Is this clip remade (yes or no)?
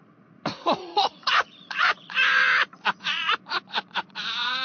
yes